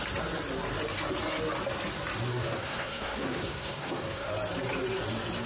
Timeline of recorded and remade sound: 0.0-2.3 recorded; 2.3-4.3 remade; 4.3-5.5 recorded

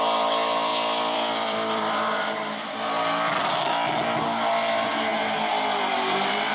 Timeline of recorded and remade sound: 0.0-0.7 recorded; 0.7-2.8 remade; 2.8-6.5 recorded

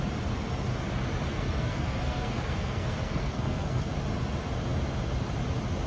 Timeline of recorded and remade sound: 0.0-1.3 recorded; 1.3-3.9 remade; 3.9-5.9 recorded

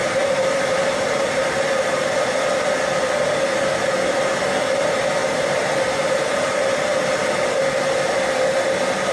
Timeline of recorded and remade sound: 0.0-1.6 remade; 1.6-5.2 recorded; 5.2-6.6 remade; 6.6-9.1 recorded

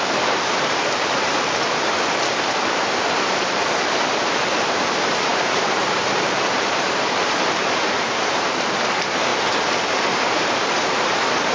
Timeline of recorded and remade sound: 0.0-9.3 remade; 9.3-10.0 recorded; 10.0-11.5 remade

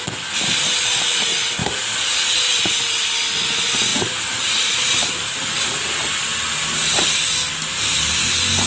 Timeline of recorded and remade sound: 0.0-1.6 recorded; 1.6-2.5 remade; 2.5-3.9 recorded; 3.9-5.8 remade; 5.8-8.7 recorded